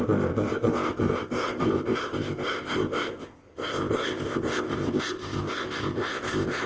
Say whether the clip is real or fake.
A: fake